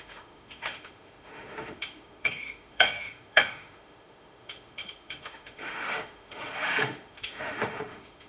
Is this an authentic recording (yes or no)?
no